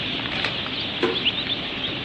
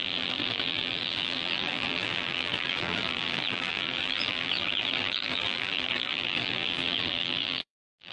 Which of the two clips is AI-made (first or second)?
second